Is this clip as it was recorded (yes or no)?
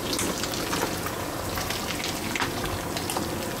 yes